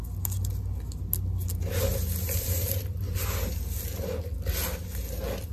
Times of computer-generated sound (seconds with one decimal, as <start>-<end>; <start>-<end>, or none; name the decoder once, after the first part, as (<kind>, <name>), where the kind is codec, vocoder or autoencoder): 1.9-3.2 (vocoder, BigVGAN v2)